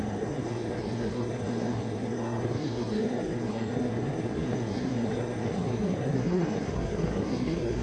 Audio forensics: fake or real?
fake